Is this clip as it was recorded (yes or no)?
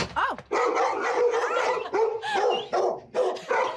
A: yes